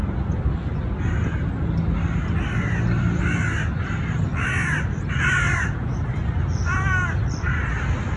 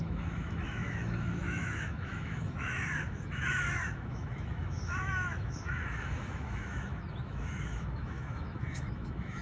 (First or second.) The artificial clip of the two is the second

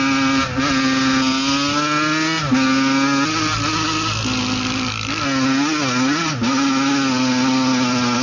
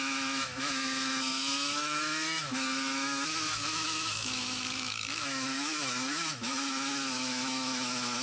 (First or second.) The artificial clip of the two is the second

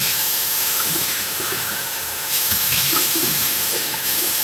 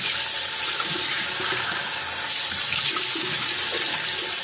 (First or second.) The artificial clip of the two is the first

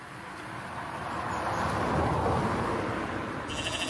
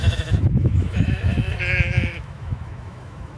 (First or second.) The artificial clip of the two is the second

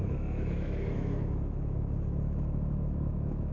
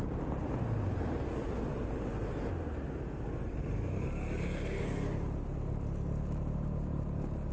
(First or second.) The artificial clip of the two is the first